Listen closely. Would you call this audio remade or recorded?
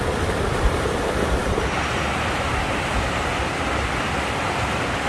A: recorded